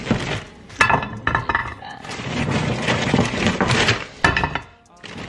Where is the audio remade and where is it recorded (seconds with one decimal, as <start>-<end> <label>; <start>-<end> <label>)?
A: 0.0-1.6 recorded; 1.6-3.6 remade; 3.6-5.3 recorded